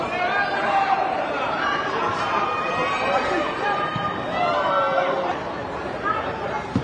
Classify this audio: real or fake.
fake